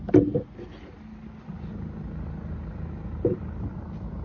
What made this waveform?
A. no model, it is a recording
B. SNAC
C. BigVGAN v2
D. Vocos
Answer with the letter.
A